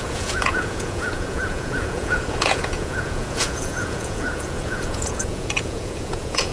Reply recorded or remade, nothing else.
remade